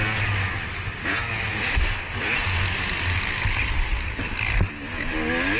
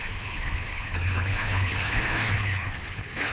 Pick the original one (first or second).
first